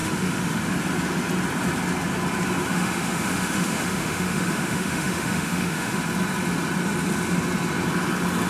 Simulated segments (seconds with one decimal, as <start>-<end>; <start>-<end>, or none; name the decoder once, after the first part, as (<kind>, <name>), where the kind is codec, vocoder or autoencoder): 0.0-0.7 (autoencoder, DAC-VAE); 2.7-6.0